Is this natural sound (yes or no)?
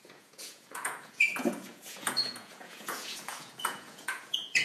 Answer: no